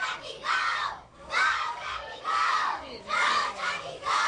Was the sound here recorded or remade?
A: remade